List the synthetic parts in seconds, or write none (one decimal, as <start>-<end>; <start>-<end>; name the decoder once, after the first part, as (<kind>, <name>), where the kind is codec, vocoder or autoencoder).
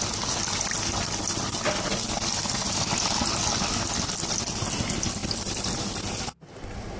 none